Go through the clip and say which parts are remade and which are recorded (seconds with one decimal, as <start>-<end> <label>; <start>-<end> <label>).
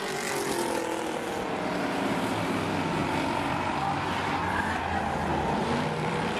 0.0-3.0 recorded; 3.0-3.8 remade; 3.8-5.3 recorded; 5.3-6.4 remade